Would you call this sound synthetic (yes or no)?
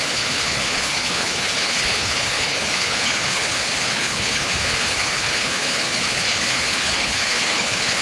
yes